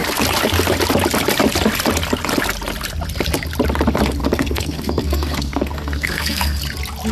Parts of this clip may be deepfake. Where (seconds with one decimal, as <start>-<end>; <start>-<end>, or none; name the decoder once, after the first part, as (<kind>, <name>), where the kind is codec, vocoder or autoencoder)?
4.2-6.6 (codec, SNAC)